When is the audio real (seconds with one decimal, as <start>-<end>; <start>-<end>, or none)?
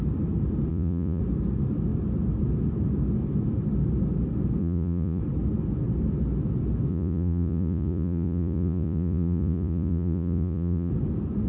0.0-0.7; 1.2-4.6; 5.2-6.9; 10.9-11.5